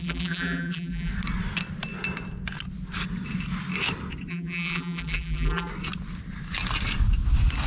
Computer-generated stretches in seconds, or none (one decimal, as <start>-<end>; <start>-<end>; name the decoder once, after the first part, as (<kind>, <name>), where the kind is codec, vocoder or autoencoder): 0.0-1.1 (vocoder, BigVGAN v2); 4.3-5.7